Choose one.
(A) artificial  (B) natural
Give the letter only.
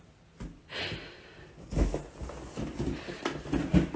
B